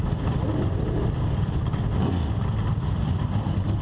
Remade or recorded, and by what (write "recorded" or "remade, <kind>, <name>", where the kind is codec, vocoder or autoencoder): recorded